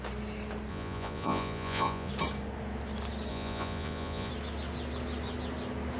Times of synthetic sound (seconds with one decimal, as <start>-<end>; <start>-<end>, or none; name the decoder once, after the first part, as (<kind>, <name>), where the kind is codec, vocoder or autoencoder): 0.7-2.1 (vocoder, Vocos); 3.3-4.3